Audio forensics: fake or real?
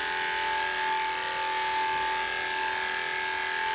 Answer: real